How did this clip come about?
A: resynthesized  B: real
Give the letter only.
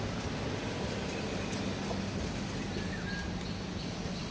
B